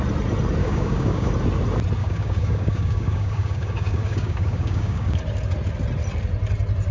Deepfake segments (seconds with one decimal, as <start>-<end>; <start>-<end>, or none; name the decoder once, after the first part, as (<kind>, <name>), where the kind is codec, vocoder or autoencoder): 0.6-1.3 (codec, DAC); 2.0-5.2